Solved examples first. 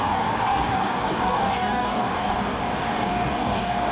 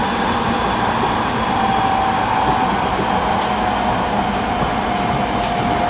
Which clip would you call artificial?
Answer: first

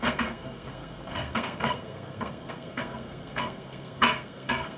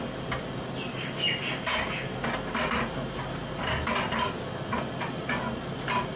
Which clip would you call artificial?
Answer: first